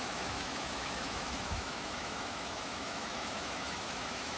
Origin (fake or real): fake